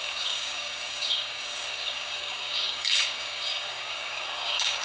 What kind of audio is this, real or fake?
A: fake